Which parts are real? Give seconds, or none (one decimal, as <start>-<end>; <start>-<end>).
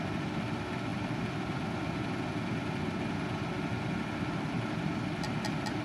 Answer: 0.0-5.8